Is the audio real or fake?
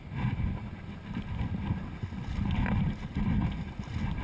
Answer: real